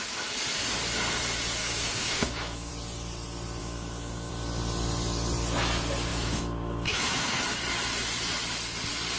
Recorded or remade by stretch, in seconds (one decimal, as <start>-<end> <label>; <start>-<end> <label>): 0.0-1.6 recorded; 1.6-2.7 remade; 2.7-3.6 recorded; 3.6-4.3 remade; 4.3-6.1 recorded; 6.1-7.4 remade; 7.4-9.2 recorded

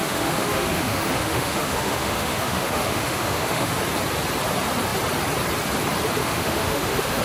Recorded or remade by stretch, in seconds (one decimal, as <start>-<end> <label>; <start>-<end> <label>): 0.0-3.8 remade; 3.8-6.2 recorded; 6.2-7.2 remade

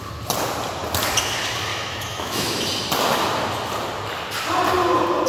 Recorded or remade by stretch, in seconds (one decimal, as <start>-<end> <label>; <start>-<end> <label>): 0.0-1.7 recorded; 1.7-2.7 remade; 2.7-5.3 recorded

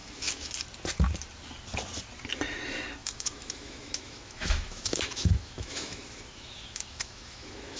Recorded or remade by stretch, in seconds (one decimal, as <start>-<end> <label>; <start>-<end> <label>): 0.0-0.5 remade; 0.5-3.0 recorded; 3.0-7.8 remade

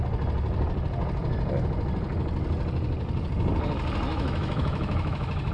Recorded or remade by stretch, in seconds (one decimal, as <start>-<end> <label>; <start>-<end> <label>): 0.0-4.1 recorded; 4.1-5.5 remade

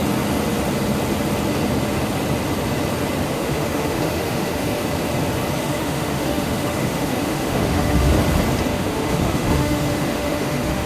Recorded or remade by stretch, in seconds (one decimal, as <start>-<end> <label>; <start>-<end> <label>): 0.0-3.3 recorded; 3.3-4.8 remade; 4.8-5.6 recorded; 5.6-8.1 remade; 8.1-8.7 recorded; 8.7-10.9 remade

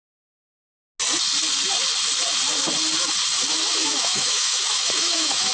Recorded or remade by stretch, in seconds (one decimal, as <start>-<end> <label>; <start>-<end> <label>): 0.0-3.8 recorded; 3.8-5.5 remade

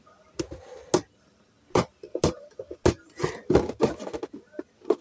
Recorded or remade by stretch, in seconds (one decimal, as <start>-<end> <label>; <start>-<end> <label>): 0.0-5.0 recorded